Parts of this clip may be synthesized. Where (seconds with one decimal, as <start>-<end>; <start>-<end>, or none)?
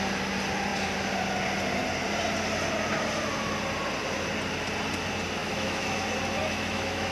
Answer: 5.4-6.0; 6.4-7.1